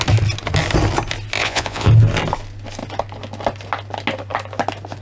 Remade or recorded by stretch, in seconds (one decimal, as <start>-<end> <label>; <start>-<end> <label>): 0.0-1.4 recorded; 1.4-1.9 remade; 1.9-5.0 recorded